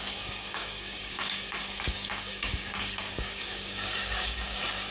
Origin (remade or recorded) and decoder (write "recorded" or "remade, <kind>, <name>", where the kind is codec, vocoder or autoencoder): remade, codec, DAC